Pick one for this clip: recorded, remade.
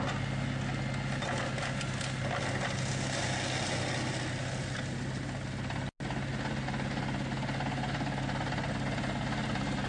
recorded